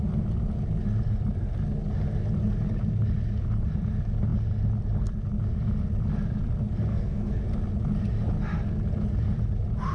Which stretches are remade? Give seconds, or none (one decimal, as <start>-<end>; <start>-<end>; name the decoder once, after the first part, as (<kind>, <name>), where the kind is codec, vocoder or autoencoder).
6.9-7.4 (codec, SNAC)